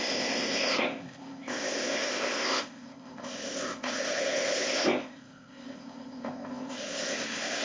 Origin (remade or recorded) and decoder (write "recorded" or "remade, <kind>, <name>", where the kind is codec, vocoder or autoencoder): remade, codec, ZipCodec